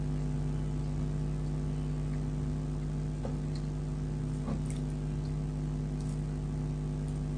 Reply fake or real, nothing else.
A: real